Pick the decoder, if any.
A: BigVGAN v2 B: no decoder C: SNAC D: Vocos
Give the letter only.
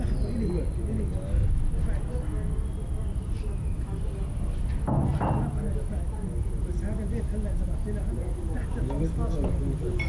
B